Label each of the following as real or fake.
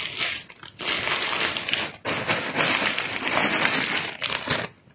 real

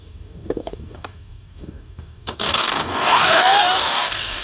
fake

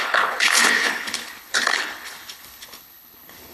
fake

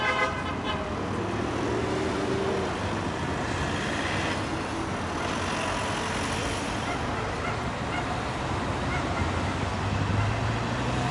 real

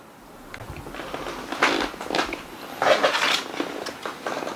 real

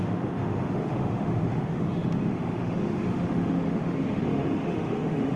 fake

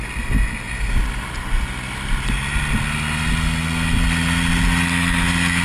real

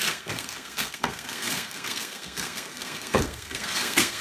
fake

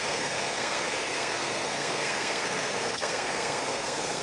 fake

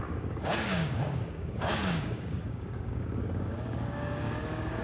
fake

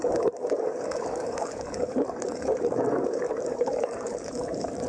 fake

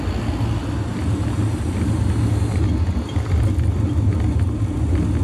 real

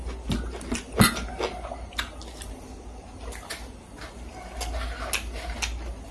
real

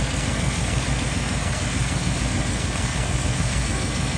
fake